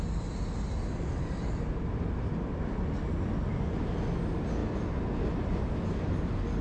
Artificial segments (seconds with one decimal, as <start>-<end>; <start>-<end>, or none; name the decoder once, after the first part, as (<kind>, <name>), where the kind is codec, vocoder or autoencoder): none